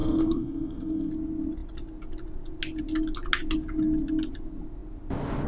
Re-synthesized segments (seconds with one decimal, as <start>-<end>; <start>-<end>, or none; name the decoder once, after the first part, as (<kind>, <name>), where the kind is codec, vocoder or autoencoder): 0.0-1.1 (codec, SNAC)